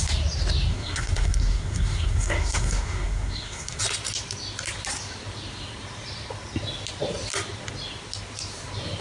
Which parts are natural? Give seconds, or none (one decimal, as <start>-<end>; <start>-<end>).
0.0-0.7; 3.8-9.0

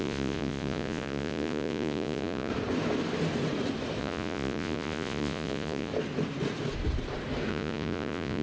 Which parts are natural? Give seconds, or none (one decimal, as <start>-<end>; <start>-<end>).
2.5-4.0; 5.9-7.5

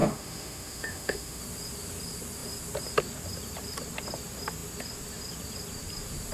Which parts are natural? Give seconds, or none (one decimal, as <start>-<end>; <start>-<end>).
1.4-6.3

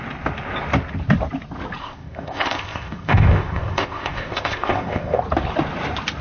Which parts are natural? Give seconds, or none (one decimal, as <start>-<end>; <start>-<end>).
0.0-1.8; 5.2-6.2

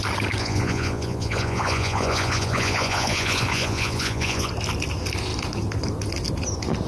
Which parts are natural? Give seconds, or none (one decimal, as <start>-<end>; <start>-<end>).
0.0-0.4; 4.5-6.9